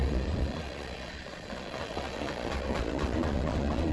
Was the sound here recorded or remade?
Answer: remade